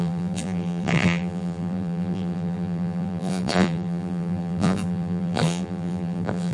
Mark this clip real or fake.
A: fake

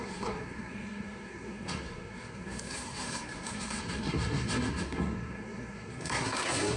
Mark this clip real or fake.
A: fake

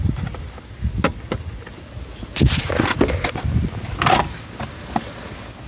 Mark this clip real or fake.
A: real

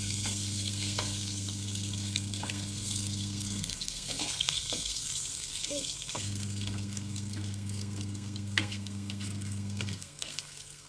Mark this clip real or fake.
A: fake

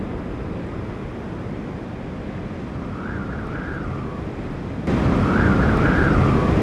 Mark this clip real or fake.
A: real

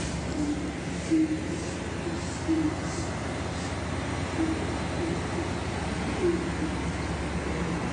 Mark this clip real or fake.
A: real